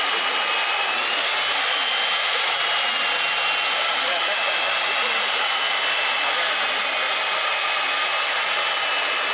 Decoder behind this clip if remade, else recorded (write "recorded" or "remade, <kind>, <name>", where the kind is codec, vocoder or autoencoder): recorded